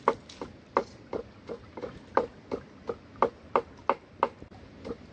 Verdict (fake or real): real